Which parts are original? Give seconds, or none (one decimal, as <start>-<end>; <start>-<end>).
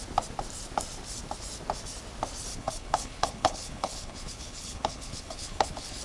0.0-2.5